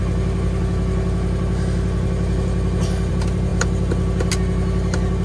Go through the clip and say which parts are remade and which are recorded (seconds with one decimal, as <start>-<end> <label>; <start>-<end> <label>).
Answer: 0.0-5.2 recorded